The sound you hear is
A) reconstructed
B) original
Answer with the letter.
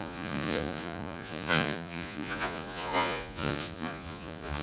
A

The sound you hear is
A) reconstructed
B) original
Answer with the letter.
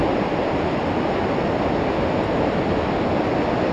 B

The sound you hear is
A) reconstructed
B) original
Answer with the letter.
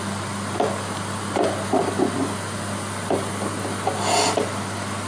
B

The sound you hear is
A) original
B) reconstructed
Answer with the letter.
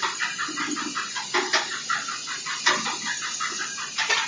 A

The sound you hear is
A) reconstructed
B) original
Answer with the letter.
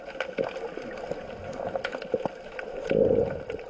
B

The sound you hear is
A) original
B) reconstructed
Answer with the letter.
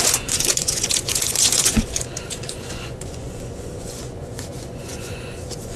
B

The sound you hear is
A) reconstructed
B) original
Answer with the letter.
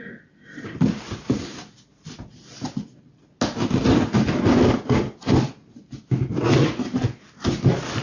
B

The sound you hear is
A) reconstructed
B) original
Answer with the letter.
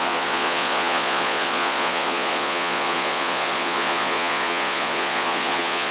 A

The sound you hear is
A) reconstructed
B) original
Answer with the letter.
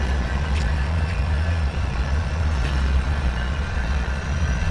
A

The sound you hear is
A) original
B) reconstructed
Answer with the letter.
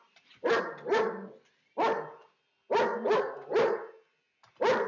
A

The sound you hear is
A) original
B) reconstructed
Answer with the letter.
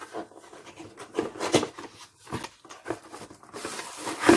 A